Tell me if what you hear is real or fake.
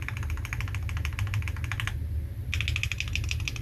real